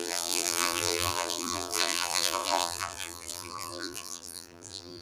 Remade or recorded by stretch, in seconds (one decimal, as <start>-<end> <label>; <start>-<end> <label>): 0.0-5.0 remade